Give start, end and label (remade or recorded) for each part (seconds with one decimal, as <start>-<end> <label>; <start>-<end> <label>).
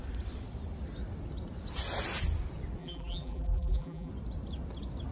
0.0-2.8 recorded; 2.8-4.1 remade; 4.1-5.1 recorded